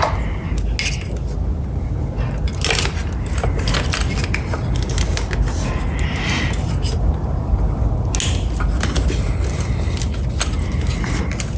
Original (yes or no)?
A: yes